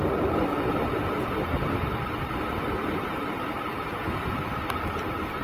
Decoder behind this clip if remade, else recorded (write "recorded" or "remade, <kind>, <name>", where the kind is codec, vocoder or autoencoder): recorded